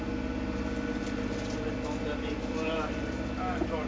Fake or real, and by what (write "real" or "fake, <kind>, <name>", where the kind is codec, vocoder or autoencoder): real